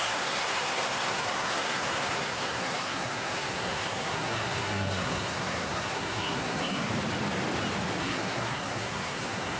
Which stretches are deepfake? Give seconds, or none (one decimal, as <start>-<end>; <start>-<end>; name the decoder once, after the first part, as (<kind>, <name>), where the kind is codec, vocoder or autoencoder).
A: 0.0-6.9 (codec, SNAC); 8.0-9.6